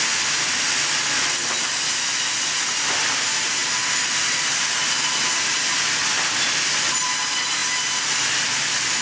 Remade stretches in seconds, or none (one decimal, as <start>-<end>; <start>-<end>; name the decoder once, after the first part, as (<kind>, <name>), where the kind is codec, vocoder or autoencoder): none